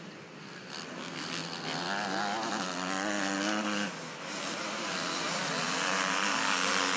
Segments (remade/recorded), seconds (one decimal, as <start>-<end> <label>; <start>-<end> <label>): 0.0-7.0 recorded